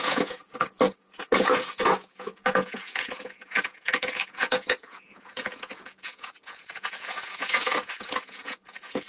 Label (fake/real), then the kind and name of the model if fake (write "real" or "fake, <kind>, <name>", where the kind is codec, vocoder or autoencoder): fake, vocoder, Vocos